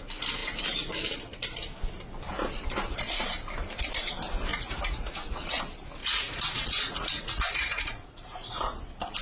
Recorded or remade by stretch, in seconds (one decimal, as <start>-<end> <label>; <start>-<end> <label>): 0.0-4.5 recorded; 4.5-5.6 remade; 5.6-6.0 recorded; 6.0-8.5 remade; 8.5-9.2 recorded